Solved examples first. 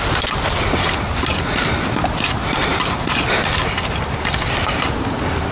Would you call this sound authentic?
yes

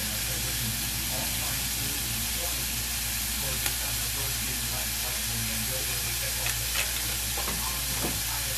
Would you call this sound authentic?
yes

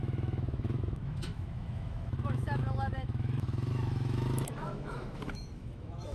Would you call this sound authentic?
no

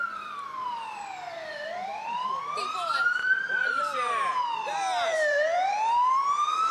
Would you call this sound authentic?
no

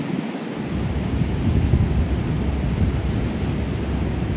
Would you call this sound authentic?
yes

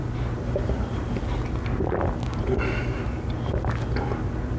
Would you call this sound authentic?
yes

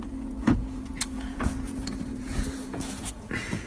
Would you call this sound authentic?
no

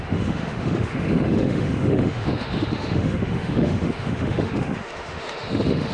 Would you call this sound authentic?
no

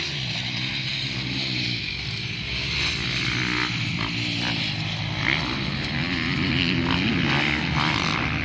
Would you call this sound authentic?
yes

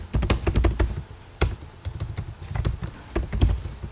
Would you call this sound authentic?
yes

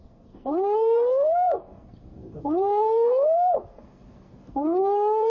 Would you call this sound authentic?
no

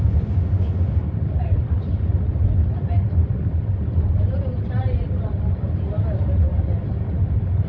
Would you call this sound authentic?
yes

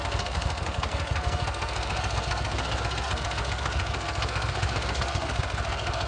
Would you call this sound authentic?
no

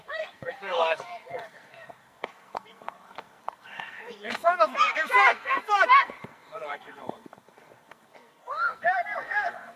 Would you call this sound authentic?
no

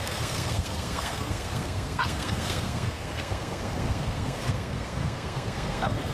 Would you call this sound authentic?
no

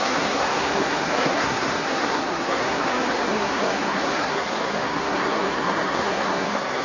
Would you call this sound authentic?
no